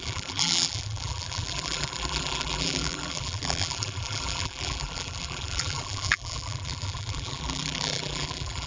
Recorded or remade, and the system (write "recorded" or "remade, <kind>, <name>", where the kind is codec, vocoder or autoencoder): remade, vocoder, BigVGAN v2